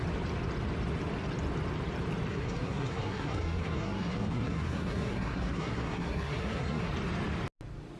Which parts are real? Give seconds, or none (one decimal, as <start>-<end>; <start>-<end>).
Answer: 0.0-2.3; 6.9-8.0